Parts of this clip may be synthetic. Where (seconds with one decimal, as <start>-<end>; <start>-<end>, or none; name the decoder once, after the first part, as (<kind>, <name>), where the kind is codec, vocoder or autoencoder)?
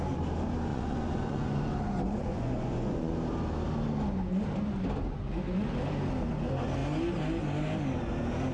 0.7-1.6 (vocoder, Vocos); 2.2-3.1